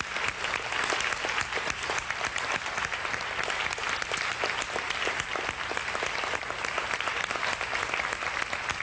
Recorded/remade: recorded